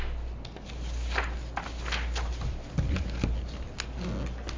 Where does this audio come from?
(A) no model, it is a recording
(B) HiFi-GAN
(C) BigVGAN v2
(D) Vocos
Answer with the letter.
A